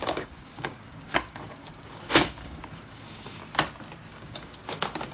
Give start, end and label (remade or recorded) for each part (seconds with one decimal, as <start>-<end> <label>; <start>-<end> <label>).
0.0-3.4 remade; 3.4-4.1 recorded; 4.1-5.1 remade